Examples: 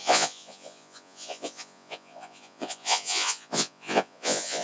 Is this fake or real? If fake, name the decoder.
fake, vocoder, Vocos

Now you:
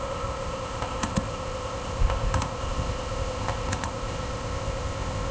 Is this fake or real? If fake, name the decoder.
fake, codec, ZipCodec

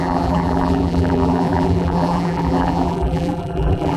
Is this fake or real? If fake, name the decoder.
fake, vocoder, BigVGAN v2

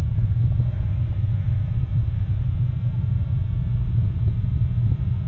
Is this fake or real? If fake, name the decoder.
real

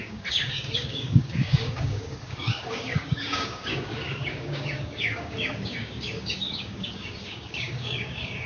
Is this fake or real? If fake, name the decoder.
fake, codec, DAC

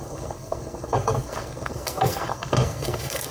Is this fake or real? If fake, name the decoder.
fake, codec, SNAC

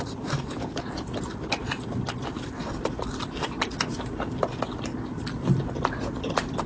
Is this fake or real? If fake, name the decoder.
real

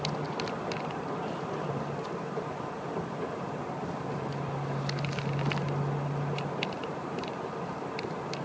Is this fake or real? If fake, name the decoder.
real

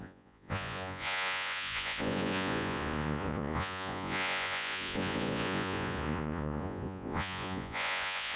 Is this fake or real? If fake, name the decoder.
fake, vocoder, Vocos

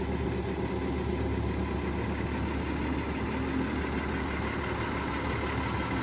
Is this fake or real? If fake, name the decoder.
real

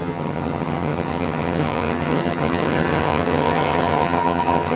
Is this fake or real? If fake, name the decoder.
fake, vocoder, HiFi-GAN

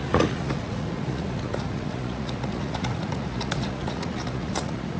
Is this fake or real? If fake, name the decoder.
fake, vocoder, Vocos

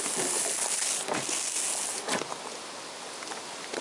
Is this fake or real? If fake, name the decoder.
real